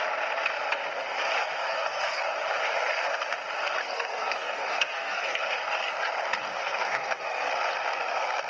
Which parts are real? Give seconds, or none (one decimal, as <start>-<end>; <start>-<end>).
0.0-1.4; 2.2-3.8; 5.4-6.6; 7.5-8.5